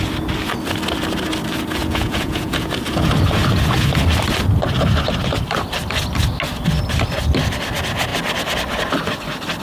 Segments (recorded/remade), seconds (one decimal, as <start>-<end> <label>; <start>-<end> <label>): 0.0-1.8 recorded; 1.8-2.7 remade; 2.7-9.6 recorded